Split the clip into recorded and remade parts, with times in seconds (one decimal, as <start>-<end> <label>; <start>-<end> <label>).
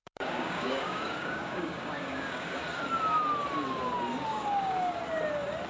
0.0-2.6 remade; 2.6-4.3 recorded; 4.3-5.0 remade; 5.0-5.7 recorded